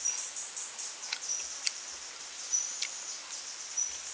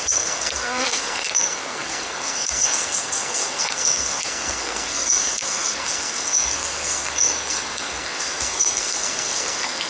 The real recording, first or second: first